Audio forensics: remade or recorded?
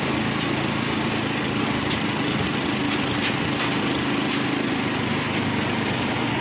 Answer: recorded